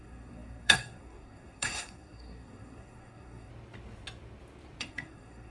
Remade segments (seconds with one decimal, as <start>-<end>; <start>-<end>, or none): 0.0-3.5; 4.8-5.5